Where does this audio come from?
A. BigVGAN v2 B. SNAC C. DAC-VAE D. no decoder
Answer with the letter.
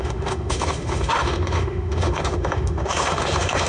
C